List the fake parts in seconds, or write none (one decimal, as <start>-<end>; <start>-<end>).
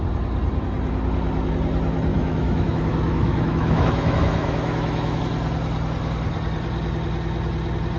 2.1-5.2